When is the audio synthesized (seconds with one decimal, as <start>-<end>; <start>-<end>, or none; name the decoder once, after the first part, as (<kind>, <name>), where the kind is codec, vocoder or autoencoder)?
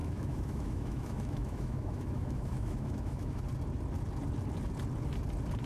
0.0-3.4 (autoencoder, DAC-VAE)